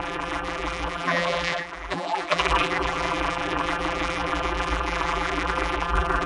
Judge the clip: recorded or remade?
remade